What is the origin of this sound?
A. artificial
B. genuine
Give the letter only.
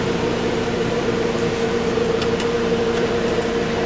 A